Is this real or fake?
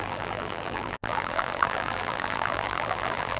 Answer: fake